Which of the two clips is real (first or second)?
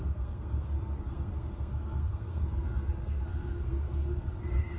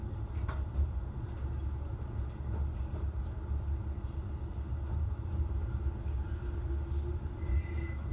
second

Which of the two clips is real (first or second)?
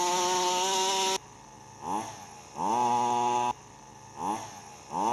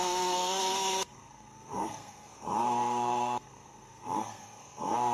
first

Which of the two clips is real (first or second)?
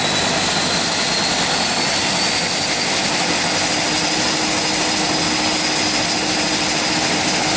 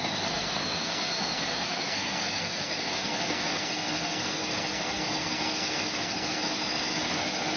first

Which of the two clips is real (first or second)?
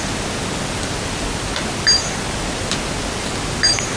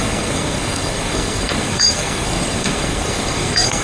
first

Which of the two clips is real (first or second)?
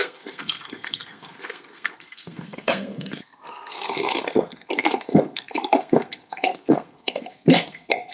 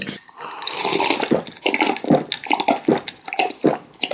second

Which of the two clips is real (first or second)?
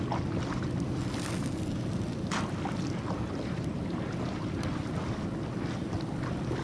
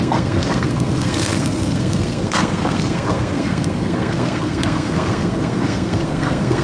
first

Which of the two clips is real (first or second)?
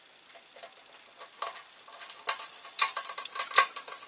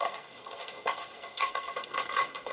first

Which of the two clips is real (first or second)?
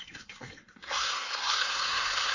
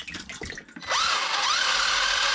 second